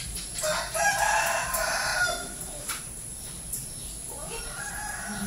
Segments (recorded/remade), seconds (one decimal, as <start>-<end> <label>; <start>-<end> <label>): 0.0-1.9 recorded; 1.9-4.7 remade; 4.7-5.3 recorded